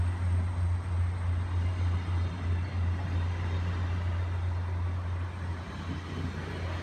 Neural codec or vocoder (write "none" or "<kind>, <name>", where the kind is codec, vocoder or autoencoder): none